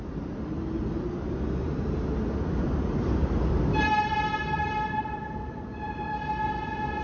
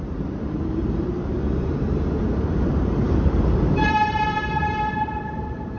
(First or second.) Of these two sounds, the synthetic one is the second